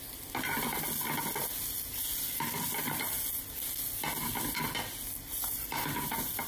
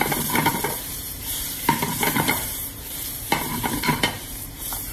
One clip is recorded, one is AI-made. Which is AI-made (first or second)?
second